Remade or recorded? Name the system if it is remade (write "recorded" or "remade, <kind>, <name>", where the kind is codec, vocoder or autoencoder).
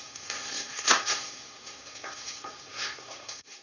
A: remade, codec, SNAC